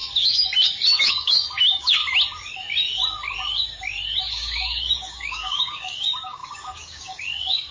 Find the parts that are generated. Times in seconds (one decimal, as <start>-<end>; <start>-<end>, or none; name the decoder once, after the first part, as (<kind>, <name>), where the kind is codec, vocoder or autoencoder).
0.0-2.0 (codec, DAC); 4.2-7.7